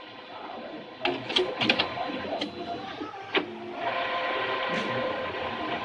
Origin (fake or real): real